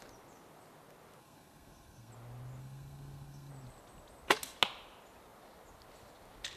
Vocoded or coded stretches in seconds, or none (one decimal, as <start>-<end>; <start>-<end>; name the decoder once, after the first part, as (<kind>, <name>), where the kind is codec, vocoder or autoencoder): 1.2-2.1 (codec, SNAC); 2.6-3.5